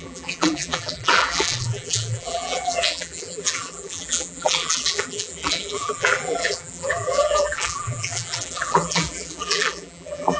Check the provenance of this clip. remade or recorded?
remade